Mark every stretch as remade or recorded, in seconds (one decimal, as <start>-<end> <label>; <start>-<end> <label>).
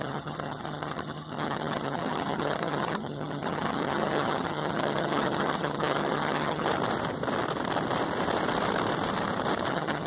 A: 0.0-6.7 remade; 6.7-9.7 recorded; 9.7-10.1 remade